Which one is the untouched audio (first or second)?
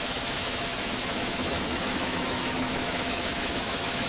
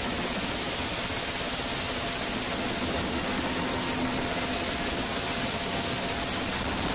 second